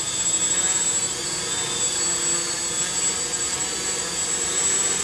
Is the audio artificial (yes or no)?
no